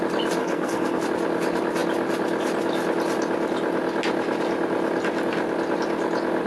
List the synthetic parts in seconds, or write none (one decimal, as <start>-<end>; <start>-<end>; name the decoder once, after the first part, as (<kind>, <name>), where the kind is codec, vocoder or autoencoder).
0.4-1.0 (codec, SNAC)